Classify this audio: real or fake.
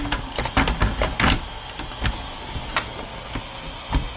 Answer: real